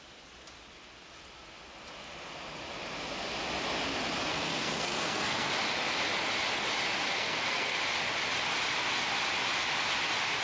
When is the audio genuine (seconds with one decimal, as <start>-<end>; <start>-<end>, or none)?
0.0-4.3; 5.5-7.1; 7.8-10.4